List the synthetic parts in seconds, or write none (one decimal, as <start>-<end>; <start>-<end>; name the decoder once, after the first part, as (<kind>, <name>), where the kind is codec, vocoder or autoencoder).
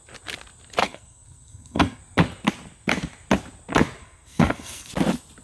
0.8-2.0 (codec, SNAC); 4.0-4.9